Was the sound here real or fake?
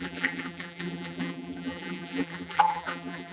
fake